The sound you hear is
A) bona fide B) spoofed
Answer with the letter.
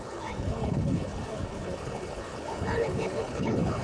B